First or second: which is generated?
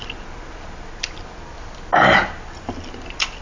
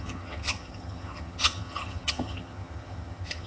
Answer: second